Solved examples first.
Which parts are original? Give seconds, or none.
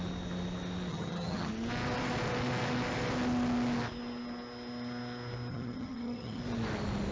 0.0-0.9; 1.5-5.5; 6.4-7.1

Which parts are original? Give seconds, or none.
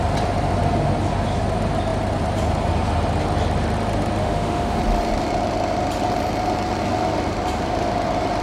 0.0-4.2; 4.8-8.4